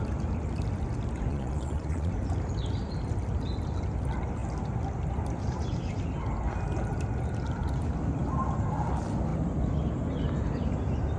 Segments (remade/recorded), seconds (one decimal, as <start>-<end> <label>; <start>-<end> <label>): 0.0-1.3 recorded; 1.3-2.1 remade; 2.1-11.2 recorded